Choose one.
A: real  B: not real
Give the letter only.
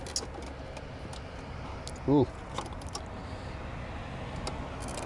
A